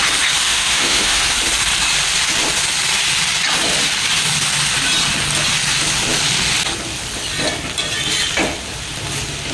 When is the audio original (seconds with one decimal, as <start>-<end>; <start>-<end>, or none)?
0.0-0.4; 1.2-9.5